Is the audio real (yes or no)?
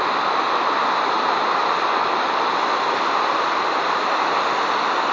yes